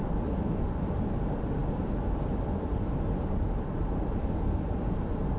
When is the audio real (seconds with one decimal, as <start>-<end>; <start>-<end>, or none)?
0.0-5.4